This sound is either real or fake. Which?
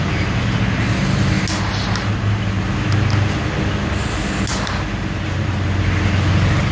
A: real